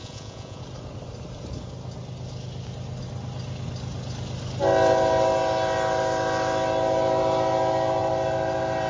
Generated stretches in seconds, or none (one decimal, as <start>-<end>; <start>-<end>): 0.0-0.6